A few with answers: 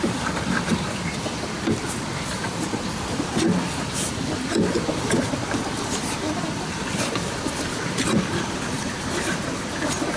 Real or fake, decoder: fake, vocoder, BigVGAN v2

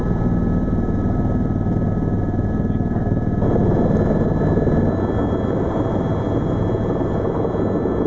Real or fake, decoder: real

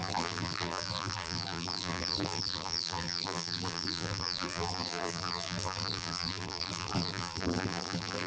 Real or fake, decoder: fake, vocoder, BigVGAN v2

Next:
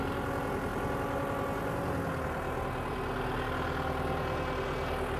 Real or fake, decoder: real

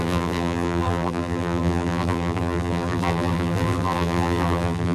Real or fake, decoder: fake, vocoder, BigVGAN v2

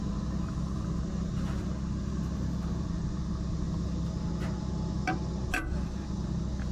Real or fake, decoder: real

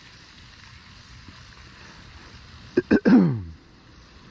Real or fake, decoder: fake, vocoder, BigVGAN v2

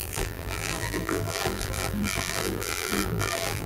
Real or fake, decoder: fake, vocoder, BigVGAN v2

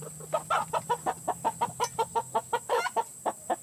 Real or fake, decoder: real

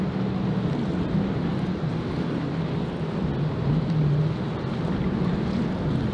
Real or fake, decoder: real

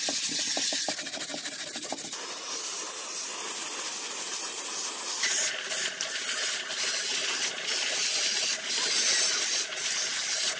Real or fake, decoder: real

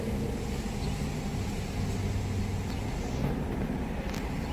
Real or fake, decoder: real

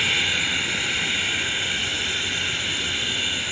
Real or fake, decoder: real